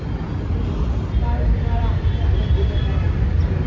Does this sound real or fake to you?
real